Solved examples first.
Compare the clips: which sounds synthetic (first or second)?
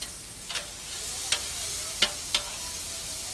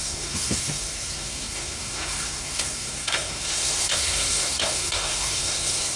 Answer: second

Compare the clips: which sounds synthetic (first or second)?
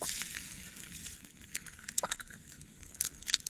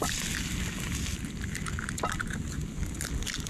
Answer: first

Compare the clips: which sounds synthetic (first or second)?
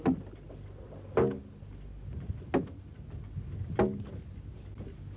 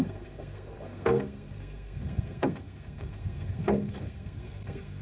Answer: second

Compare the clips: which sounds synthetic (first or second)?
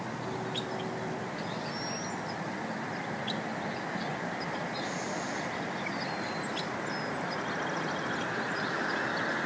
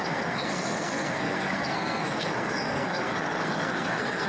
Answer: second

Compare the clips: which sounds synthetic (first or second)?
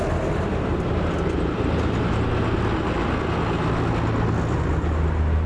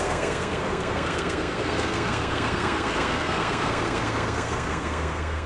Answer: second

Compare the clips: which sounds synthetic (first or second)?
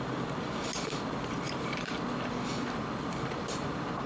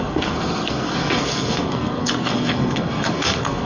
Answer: second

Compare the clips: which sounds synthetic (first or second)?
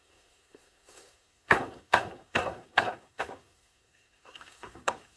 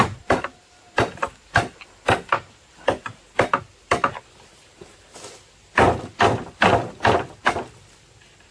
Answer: first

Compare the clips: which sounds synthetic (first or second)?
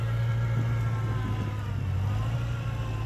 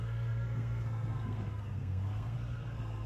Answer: second